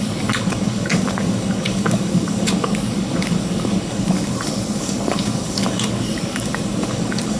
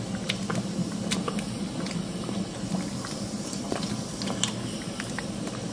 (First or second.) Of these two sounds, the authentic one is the second